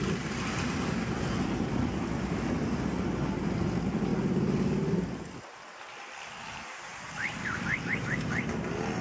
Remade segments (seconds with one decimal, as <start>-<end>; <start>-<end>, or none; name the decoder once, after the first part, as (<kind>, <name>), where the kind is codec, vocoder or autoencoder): none